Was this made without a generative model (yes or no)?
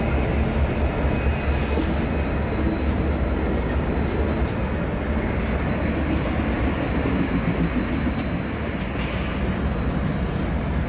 yes